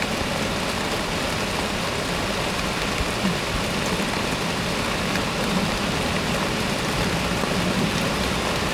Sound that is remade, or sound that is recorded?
recorded